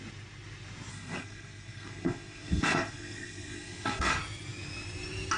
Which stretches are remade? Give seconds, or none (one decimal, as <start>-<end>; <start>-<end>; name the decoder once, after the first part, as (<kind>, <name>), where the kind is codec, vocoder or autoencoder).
0.9-4.1 (codec, SNAC)

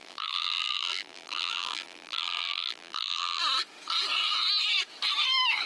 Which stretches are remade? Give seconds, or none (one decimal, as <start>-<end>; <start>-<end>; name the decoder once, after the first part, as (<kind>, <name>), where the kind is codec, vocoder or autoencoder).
0.0-3.4 (vocoder, BigVGAN v2)

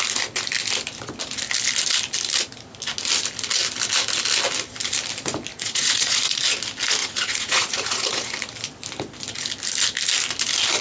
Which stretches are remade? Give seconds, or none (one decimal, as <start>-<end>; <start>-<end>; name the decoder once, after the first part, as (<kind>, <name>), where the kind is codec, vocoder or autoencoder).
5.5-6.4 (vocoder, Vocos); 7.0-8.3

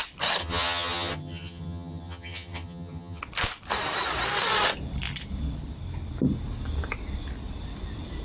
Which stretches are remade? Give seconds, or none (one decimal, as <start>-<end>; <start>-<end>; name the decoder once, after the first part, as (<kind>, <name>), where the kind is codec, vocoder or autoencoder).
0.4-3.2 (vocoder, HiFi-GAN)

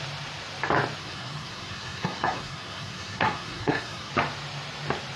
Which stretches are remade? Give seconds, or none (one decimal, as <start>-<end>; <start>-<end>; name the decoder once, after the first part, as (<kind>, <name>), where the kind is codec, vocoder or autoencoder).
1.0-4.1 (codec, SNAC)

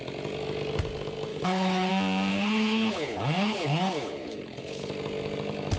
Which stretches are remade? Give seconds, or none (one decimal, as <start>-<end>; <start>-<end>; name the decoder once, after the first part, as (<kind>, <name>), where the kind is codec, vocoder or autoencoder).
1.3-1.9 (codec, HILCodec); 2.3-4.9

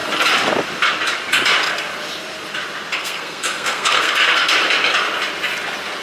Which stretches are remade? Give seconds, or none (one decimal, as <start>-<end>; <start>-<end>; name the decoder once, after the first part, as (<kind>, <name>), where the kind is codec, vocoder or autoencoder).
3.0-4.5 (codec, SNAC)

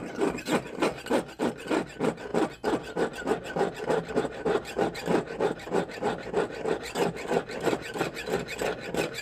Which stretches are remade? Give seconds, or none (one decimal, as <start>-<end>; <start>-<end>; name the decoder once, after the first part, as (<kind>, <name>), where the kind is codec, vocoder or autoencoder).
7.0-7.5 (vocoder, BigVGAN v2)